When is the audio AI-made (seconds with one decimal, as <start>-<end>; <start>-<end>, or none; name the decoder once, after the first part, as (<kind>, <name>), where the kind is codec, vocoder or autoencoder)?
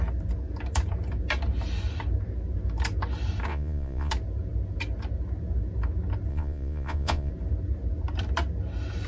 3.5-4.1 (vocoder, Vocos); 6.3-7.3